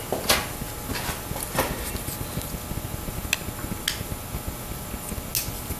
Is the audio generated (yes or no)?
no